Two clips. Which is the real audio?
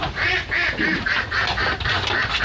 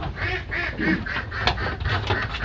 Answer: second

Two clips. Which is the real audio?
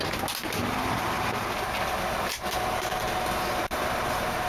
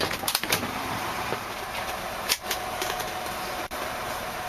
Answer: first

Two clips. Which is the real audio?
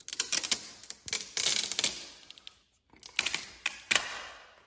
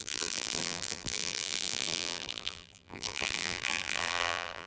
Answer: first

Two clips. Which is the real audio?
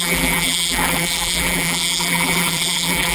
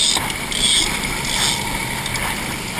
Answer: second